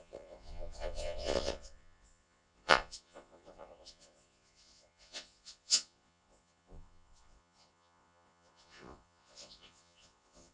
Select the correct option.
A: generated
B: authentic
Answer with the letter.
A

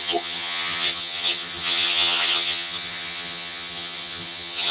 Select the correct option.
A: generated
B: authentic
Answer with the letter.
A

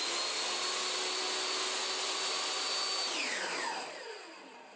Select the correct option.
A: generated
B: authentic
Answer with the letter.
B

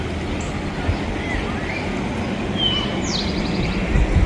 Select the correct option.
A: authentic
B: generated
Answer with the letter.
A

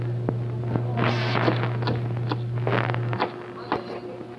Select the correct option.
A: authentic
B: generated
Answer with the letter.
A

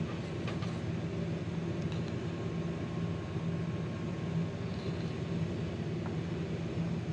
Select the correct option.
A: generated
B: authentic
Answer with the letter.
B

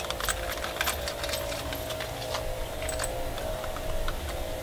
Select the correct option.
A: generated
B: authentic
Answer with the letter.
B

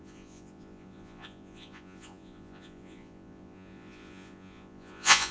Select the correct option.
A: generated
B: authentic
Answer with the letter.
A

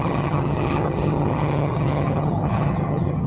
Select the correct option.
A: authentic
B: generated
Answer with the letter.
B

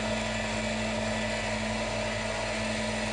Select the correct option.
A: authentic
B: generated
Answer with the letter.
A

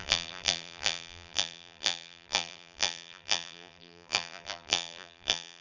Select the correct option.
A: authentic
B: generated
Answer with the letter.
B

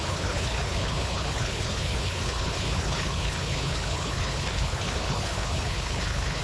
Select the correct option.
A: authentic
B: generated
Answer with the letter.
B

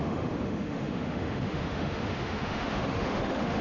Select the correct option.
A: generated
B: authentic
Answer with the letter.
A